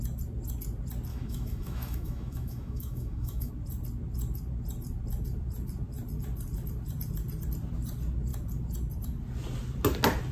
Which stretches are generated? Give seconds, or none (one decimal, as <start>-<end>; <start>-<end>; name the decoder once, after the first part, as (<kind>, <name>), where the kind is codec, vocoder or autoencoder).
1.1-3.5 (autoencoder, DAC-VAE)